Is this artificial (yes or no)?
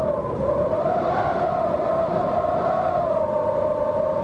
no